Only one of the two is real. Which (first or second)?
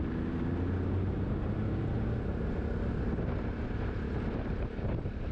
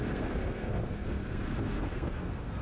first